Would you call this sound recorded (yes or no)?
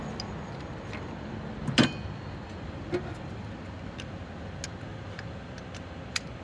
yes